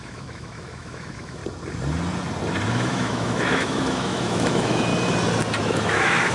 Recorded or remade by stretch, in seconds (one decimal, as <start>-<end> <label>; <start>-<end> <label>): 0.0-1.4 remade; 1.4-2.7 recorded; 2.7-4.9 remade; 4.9-5.6 recorded; 5.6-6.3 remade